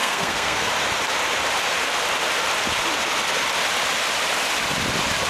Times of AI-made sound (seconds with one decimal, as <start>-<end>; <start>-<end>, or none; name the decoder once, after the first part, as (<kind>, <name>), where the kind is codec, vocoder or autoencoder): 0.0-0.7 (codec, SNAC)